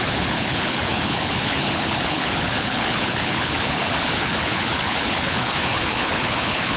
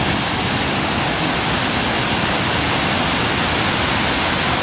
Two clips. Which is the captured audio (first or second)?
second